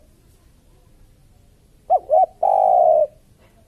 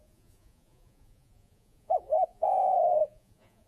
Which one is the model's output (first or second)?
second